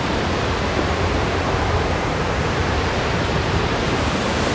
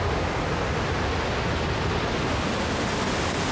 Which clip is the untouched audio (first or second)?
second